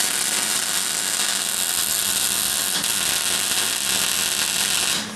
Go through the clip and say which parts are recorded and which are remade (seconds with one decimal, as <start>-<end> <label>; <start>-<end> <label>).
0.0-5.2 recorded